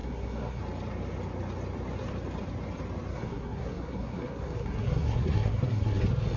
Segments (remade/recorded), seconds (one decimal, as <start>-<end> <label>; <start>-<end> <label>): 0.0-0.6 remade; 0.6-3.1 recorded; 3.1-6.0 remade; 6.0-6.4 recorded